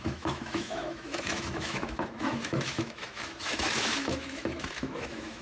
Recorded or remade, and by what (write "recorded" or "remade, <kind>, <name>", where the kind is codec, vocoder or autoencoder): remade, autoencoder, DAC-VAE